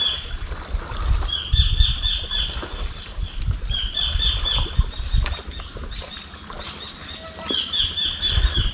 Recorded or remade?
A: recorded